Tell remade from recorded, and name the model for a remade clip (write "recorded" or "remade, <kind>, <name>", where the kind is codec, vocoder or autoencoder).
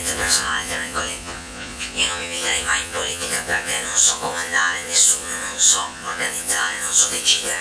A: remade, vocoder, Vocos